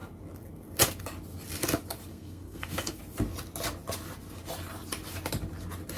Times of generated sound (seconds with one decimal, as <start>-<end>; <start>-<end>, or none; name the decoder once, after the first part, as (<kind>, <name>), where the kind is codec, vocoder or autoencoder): 2.1-3.0 (codec, SNAC)